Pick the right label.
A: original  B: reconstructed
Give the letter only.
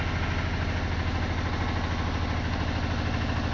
A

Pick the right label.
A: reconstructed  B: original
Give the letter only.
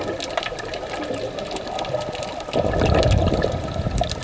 B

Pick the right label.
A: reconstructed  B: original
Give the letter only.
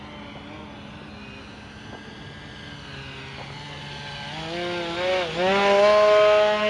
B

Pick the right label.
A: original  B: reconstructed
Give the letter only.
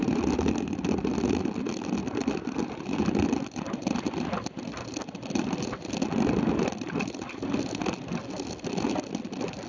A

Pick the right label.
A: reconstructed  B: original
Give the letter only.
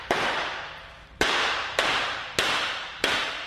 A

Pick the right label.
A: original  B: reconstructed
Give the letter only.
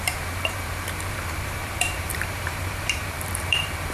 B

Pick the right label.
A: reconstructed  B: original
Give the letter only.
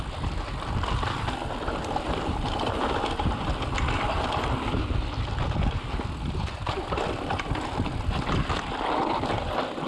B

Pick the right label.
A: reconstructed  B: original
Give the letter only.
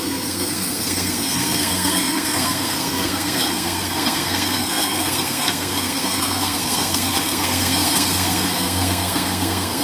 A